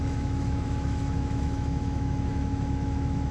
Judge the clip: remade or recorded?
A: remade